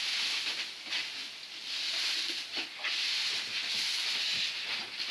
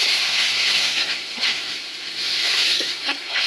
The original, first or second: first